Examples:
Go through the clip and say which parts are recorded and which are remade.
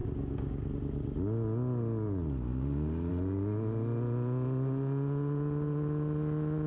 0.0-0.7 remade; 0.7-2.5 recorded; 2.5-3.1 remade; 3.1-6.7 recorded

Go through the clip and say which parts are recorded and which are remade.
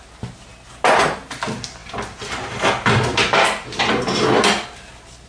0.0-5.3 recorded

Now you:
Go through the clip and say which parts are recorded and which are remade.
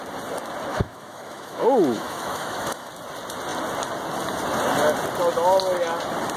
0.0-0.7 recorded; 0.7-2.9 remade; 2.9-6.4 recorded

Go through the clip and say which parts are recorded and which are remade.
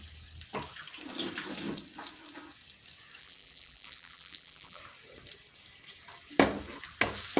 0.0-3.2 recorded; 3.2-4.8 remade; 4.8-7.4 recorded